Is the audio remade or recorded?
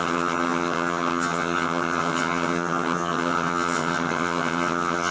remade